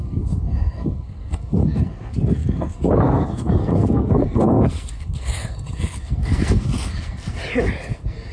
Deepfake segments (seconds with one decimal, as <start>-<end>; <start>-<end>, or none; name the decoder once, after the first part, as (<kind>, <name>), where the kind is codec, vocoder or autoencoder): 0.0-7.4 (codec, SNAC); 7.9-8.3